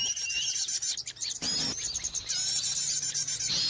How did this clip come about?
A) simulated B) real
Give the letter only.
B